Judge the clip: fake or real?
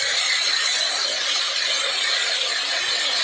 real